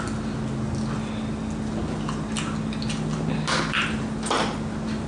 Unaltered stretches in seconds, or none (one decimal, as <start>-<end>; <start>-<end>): 0.0-3.1; 3.8-5.1